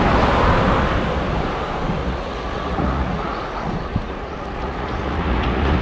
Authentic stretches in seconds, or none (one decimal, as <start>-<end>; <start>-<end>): 0.0-2.0